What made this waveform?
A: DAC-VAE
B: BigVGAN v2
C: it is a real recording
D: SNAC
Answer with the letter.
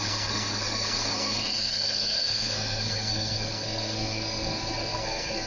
D